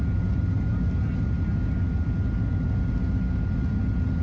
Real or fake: real